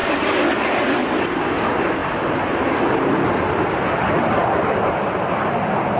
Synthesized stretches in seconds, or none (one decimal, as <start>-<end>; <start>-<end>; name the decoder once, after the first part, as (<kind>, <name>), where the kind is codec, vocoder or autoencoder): none